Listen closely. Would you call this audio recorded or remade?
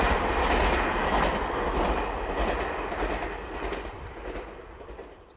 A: recorded